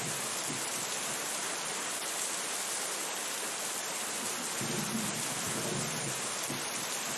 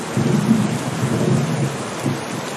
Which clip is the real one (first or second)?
second